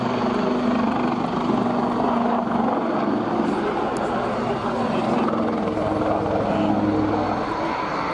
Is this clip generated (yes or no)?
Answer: no